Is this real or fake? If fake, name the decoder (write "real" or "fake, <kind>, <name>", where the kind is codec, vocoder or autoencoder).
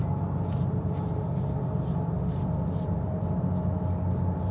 real